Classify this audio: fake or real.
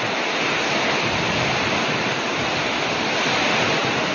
real